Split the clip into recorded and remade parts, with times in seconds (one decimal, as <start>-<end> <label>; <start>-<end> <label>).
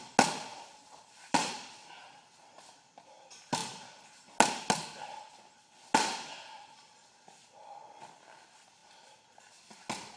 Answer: 0.0-0.5 recorded; 0.5-1.5 remade; 1.5-10.2 recorded